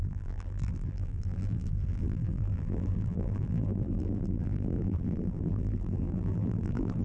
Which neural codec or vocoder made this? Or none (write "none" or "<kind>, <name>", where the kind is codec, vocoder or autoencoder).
vocoder, BigVGAN v2